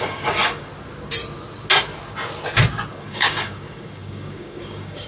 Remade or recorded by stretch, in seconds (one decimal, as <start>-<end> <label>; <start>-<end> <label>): 0.0-0.7 remade; 0.7-2.9 recorded; 2.9-5.1 remade